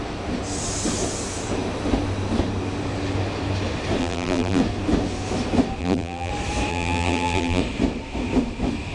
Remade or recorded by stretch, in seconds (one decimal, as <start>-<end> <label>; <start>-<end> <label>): 0.0-4.0 recorded; 4.0-4.6 remade; 4.6-5.8 recorded; 5.8-6.3 remade; 6.3-6.7 recorded; 6.7-7.6 remade; 7.6-8.9 recorded

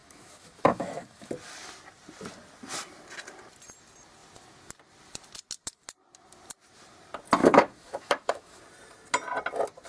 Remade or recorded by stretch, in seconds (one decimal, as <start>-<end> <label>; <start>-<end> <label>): 0.0-1.3 remade; 1.3-7.4 recorded; 7.4-8.6 remade; 8.6-9.9 recorded

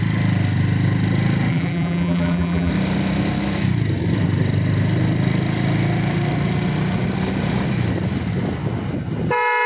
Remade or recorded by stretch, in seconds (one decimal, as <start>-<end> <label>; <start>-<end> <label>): 0.0-1.5 recorded; 1.5-2.7 remade; 2.7-9.7 recorded

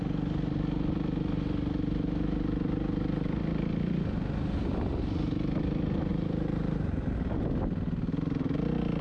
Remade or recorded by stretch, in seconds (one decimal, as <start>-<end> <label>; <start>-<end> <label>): 0.0-6.1 recorded; 6.1-7.1 remade; 7.1-9.0 recorded

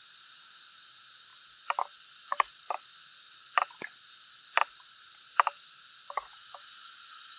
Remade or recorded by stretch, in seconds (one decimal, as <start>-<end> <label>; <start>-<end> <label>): 0.0-7.4 recorded